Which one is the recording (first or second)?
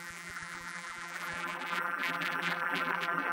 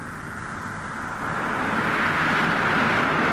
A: second